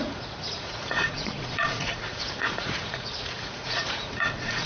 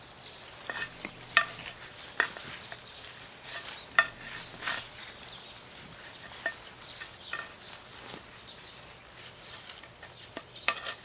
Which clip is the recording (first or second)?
second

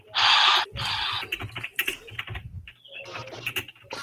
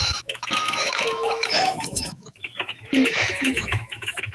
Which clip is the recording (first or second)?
first